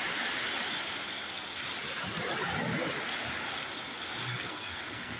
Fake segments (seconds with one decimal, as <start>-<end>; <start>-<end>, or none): 4.3-5.2